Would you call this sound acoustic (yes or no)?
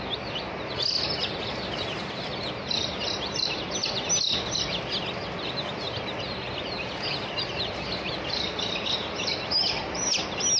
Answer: yes